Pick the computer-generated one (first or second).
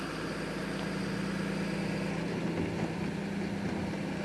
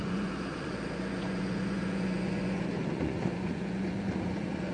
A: second